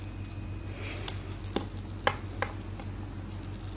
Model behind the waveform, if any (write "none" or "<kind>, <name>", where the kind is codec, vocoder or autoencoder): none